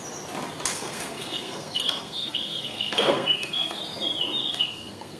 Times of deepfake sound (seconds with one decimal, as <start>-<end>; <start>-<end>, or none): 0.7-3.8; 4.4-5.2

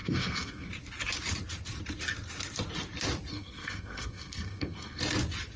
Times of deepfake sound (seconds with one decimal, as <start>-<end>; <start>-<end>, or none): 0.0-0.7; 3.3-5.0

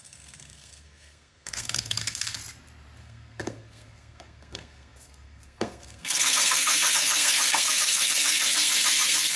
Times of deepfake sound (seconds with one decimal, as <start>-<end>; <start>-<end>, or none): 0.0-2.4; 3.0-9.4

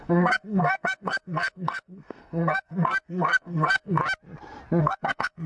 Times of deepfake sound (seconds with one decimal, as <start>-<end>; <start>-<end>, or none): 0.0-4.0; 4.8-5.5

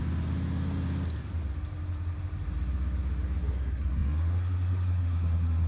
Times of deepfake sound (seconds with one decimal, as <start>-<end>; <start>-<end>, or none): 3.4-5.7